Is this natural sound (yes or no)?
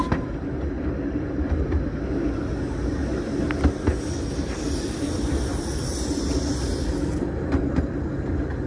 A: yes